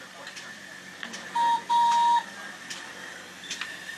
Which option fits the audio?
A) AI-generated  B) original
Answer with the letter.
B